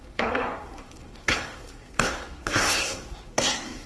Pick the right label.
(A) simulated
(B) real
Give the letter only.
A